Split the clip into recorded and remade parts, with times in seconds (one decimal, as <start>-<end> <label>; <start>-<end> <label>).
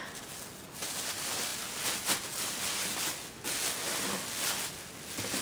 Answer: 0.0-5.4 recorded